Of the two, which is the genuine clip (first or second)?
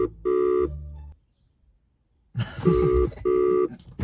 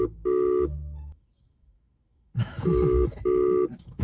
first